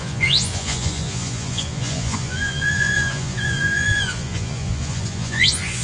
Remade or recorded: remade